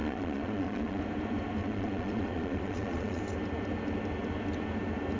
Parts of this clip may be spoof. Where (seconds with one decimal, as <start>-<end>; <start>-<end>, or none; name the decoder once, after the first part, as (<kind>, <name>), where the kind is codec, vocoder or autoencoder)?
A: 0.0-1.0 (vocoder, Vocos); 1.6-3.2